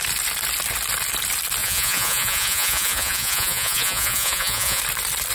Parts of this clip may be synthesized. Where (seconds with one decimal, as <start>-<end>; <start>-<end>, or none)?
1.6-4.8